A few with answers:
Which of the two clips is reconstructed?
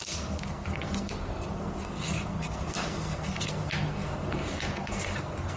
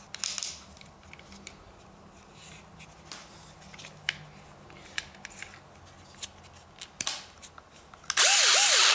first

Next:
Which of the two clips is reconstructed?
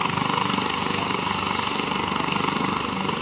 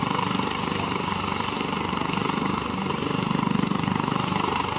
second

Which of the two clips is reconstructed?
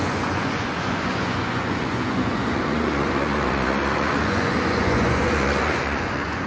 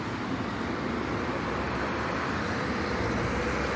first